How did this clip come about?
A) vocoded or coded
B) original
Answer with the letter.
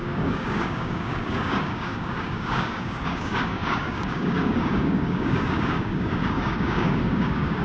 A